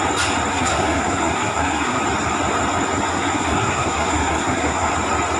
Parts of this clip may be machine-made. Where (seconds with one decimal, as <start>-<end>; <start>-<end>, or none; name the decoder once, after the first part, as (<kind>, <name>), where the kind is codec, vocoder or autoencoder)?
0.5-2.0 (codec, SNAC); 3.1-4.9